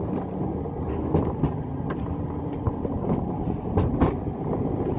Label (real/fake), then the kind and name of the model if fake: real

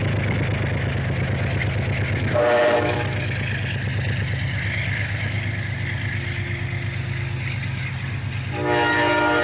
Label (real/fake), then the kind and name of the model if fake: real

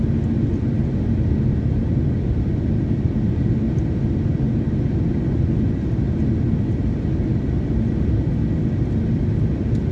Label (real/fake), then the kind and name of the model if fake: real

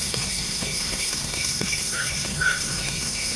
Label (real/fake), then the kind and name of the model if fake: fake, codec, SNAC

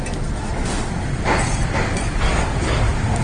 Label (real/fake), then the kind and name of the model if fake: real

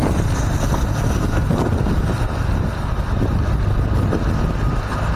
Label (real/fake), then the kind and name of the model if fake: real